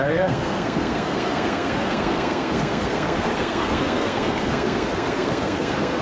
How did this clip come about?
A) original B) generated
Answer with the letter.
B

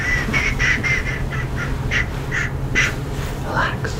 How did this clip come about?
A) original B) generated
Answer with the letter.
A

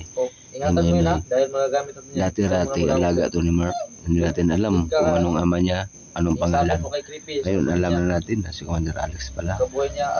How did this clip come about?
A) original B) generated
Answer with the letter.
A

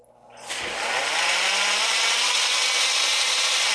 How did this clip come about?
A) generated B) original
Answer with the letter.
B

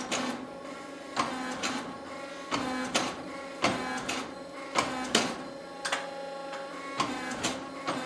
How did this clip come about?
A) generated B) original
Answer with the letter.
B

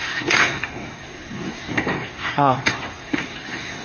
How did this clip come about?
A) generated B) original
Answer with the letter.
A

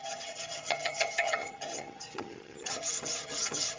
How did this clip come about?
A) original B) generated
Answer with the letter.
B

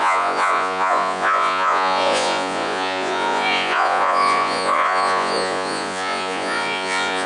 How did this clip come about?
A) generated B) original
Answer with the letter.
A